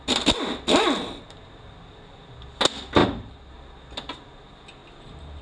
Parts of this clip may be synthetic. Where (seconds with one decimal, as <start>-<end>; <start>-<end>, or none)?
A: 3.0-3.5